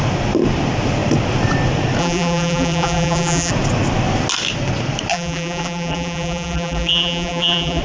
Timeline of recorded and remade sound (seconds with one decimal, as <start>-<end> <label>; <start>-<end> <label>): 0.0-2.0 recorded; 2.0-3.5 remade; 3.5-5.1 recorded; 5.1-7.8 remade